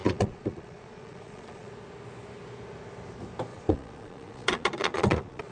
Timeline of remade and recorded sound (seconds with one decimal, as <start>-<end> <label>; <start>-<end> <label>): 0.0-1.7 remade; 1.7-3.5 recorded; 3.5-5.5 remade